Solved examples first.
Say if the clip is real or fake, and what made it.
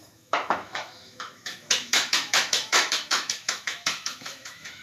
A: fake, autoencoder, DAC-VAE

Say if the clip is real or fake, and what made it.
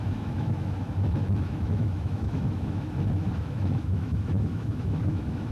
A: fake, autoencoder, DAC-VAE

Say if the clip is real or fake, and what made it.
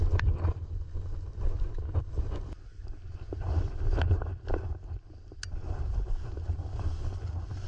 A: real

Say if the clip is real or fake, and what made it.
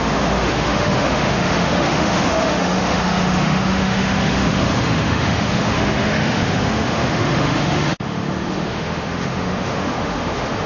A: fake, autoencoder, DAC-VAE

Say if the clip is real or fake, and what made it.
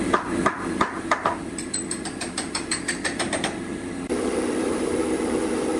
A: real